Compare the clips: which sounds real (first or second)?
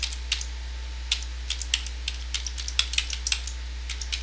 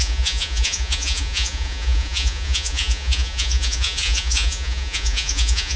first